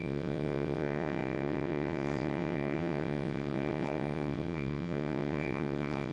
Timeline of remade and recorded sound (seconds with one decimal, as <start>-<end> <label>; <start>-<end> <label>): 0.0-6.1 remade